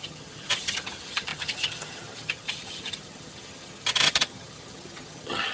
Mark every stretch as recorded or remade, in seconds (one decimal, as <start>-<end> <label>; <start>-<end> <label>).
0.0-5.5 remade